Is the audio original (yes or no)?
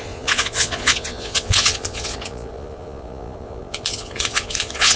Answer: no